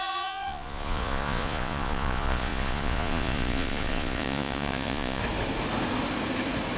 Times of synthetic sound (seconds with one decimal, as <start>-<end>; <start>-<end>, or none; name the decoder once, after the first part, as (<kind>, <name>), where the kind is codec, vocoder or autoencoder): 0.0-5.2 (vocoder, Vocos)